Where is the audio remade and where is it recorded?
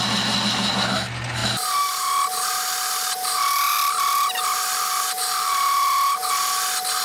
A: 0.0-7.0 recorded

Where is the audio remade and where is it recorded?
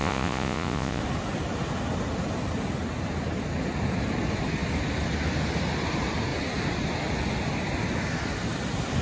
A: 0.0-1.0 remade; 1.0-9.0 recorded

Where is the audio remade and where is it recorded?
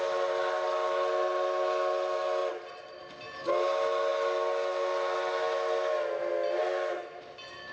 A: 0.0-7.7 recorded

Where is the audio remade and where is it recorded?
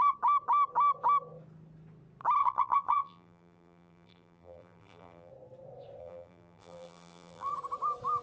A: 0.0-2.4 recorded; 2.4-5.3 remade; 5.3-6.0 recorded; 6.0-7.5 remade; 7.5-8.2 recorded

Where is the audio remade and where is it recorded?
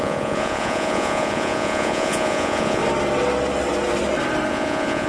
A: 0.0-2.8 remade; 2.8-4.5 recorded; 4.5-5.1 remade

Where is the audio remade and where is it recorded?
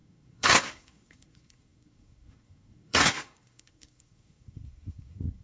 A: 0.0-5.4 remade